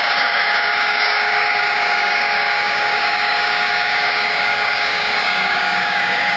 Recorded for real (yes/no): no